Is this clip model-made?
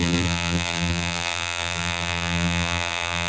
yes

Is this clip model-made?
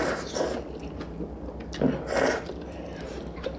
no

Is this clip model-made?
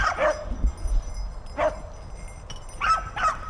no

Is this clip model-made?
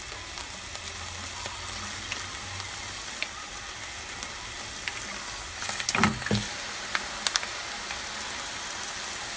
no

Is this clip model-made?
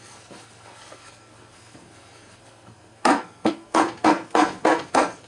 yes